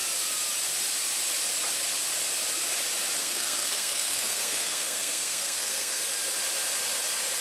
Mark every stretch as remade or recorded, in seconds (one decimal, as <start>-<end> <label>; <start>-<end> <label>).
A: 0.0-3.2 recorded; 3.2-6.0 remade; 6.0-7.4 recorded